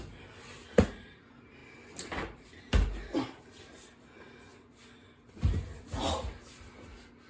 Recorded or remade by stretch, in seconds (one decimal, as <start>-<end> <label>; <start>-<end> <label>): 0.0-7.3 recorded